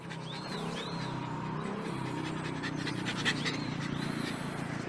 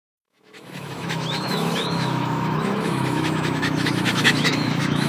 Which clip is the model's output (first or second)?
second